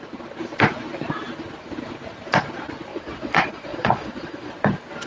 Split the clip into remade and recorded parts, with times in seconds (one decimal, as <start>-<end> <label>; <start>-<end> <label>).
0.0-2.9 recorded; 2.9-4.5 remade; 4.5-5.1 recorded